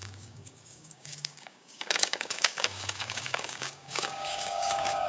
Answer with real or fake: fake